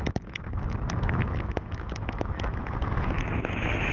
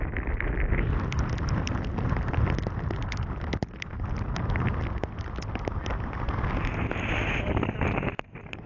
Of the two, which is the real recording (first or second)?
second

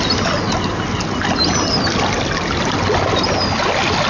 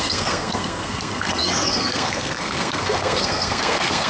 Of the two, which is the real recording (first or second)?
first